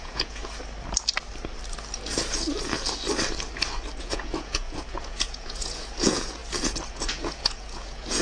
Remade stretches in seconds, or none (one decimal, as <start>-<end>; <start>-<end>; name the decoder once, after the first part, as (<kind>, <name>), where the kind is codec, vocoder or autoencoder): 0.0-0.4 (vocoder, Vocos); 4.0-6.4; 6.9-8.2